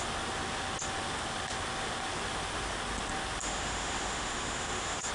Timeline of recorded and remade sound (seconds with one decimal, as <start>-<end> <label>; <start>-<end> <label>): 0.0-3.4 recorded; 3.4-5.1 remade